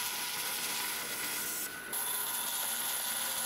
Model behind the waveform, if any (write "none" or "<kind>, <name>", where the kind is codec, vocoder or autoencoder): none